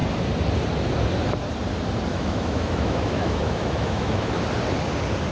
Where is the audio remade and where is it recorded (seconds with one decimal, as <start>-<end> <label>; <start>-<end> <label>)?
0.0-2.1 recorded; 2.1-4.3 remade; 4.3-5.3 recorded